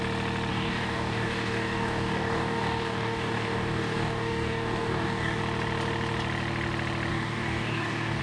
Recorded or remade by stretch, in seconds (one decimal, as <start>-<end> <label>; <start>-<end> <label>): 0.0-0.5 recorded; 0.5-5.4 remade; 5.4-7.1 recorded; 7.1-8.2 remade